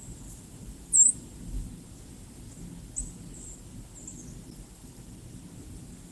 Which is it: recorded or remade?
recorded